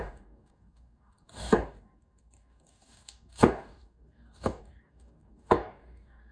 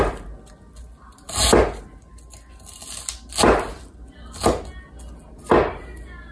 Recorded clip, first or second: second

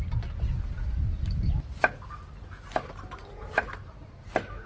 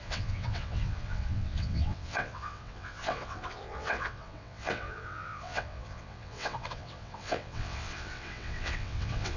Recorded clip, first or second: first